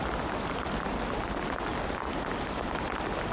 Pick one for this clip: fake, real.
real